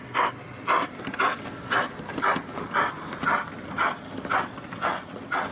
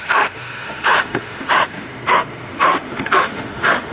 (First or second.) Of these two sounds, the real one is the first